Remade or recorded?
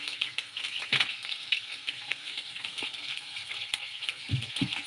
remade